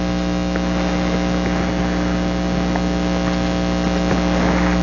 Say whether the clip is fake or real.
real